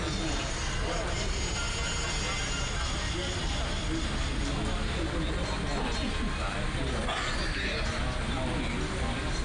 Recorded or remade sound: recorded